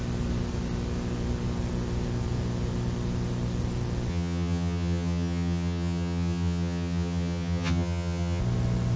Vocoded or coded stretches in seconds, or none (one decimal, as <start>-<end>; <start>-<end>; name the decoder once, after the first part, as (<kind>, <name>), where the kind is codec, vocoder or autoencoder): 4.1-8.4 (vocoder, HiFi-GAN)